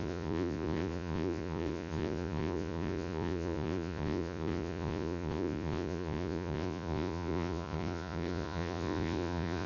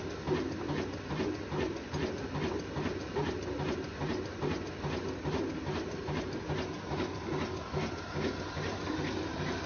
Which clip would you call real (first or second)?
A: second